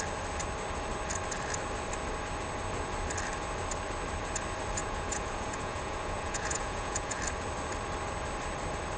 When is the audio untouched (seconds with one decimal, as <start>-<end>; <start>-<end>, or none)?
0.0-4.8; 7.2-9.0